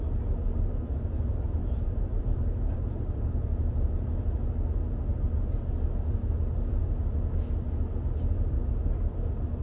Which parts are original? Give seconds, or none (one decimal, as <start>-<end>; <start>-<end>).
0.0-1.6; 2.9-9.6